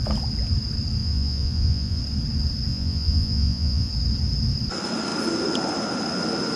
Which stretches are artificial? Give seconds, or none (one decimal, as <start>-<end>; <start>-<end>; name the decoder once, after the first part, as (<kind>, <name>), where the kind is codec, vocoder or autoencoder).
1.0-2.0 (vocoder, Vocos); 2.7-3.9